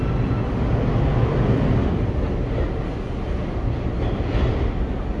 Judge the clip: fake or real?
real